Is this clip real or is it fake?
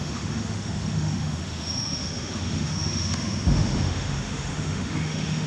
fake